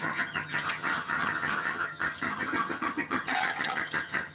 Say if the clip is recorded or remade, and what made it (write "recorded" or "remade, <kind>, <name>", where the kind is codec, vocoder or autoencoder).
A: remade, vocoder, HiFi-GAN